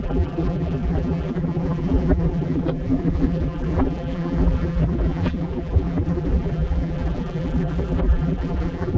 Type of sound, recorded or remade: remade